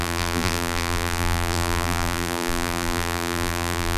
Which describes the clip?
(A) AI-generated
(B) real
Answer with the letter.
A